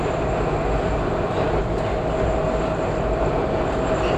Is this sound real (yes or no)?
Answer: yes